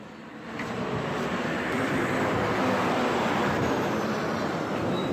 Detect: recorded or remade remade